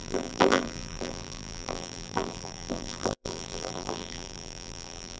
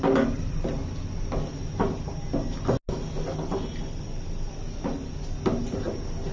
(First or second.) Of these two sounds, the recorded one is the second